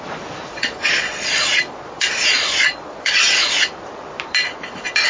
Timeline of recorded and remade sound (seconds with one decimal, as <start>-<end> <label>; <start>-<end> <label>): 0.0-0.5 recorded; 0.5-3.6 remade; 3.6-5.1 recorded